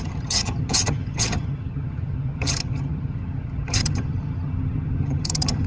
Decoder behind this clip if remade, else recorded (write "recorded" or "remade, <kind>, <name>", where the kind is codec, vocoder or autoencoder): remade, vocoder, HiFi-GAN